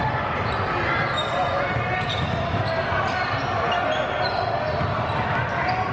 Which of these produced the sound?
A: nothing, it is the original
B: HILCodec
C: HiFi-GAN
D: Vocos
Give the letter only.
A